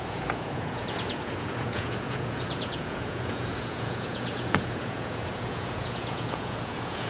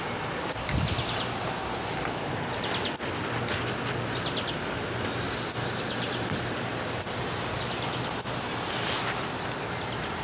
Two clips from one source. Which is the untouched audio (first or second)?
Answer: second